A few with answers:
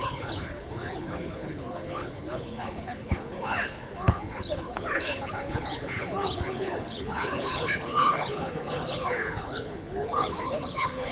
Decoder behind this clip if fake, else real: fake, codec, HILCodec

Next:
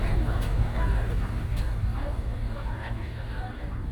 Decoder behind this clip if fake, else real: fake, codec, DAC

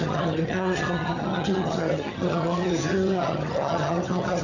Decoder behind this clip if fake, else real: fake, vocoder, HiFi-GAN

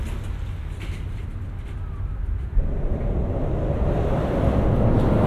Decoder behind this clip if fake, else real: real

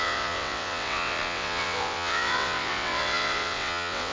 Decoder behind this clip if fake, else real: fake, vocoder, WaveNeXt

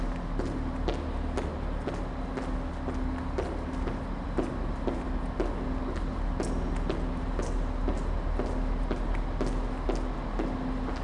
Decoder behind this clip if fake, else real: real